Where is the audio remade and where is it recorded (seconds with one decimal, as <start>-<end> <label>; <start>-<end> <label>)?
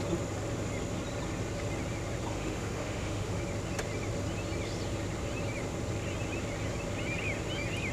0.0-2.3 recorded; 2.3-3.4 remade; 3.4-7.9 recorded